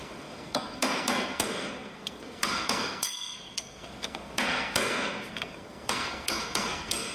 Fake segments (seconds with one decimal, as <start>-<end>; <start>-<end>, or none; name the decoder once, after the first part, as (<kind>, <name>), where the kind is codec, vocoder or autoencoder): 0.0-7.1 (codec, SNAC)

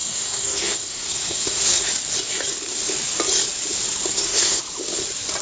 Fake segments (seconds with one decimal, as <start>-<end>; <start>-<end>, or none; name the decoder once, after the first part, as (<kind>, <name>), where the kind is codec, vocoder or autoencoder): 0.0-1.9 (codec, SNAC); 4.1-4.6